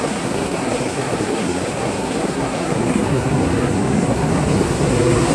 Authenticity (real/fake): fake